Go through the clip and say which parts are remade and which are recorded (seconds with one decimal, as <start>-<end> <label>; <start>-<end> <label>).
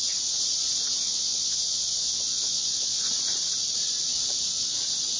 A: 0.0-1.0 recorded; 1.0-3.1 remade; 3.1-5.2 recorded